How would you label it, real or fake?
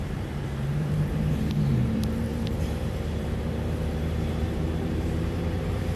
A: fake